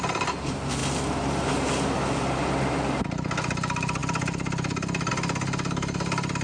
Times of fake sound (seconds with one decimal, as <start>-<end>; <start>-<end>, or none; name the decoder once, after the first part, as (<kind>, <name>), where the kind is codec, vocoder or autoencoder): none